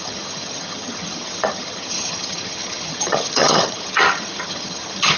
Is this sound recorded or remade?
remade